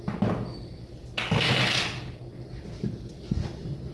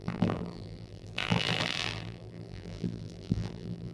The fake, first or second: second